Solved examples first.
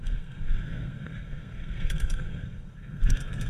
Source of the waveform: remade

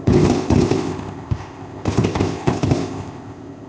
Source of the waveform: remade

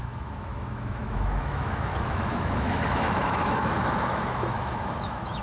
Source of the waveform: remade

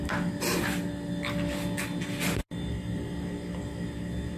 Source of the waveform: recorded